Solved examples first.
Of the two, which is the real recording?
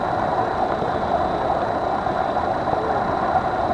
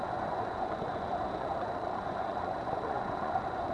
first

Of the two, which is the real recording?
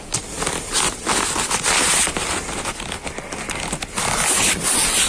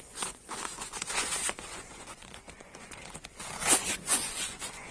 first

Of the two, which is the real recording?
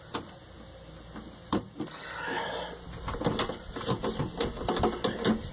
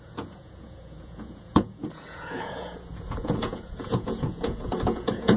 first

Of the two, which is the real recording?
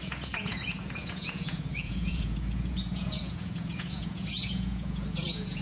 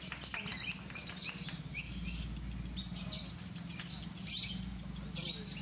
second